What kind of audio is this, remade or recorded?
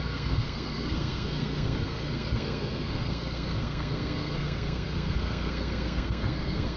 remade